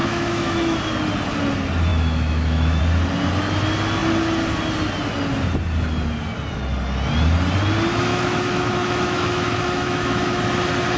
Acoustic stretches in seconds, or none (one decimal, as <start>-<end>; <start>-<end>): 0.8-1.9; 2.8-8.1; 10.4-11.0